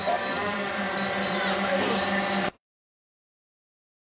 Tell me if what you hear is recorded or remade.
remade